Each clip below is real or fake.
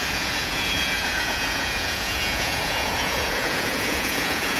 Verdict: fake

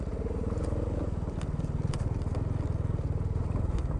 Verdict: real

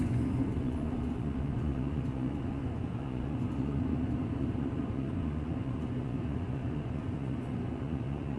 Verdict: fake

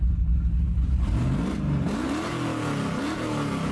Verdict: real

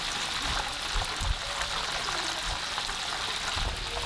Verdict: real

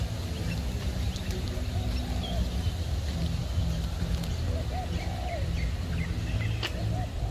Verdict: real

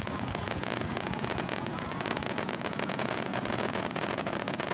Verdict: fake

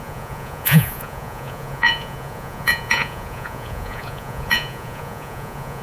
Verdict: fake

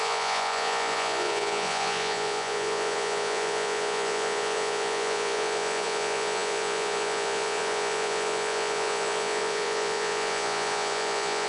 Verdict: fake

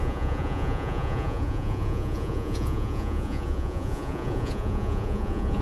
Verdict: fake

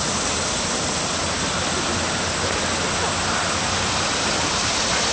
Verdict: real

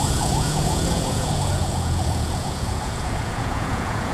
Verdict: fake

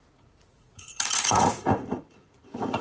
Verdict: fake